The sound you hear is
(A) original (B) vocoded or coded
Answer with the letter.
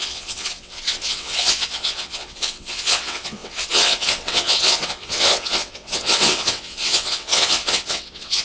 B